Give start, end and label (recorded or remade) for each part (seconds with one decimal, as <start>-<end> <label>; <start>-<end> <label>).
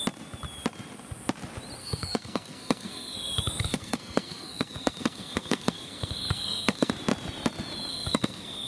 0.0-1.8 recorded; 1.8-6.9 remade; 6.9-7.9 recorded; 7.9-8.7 remade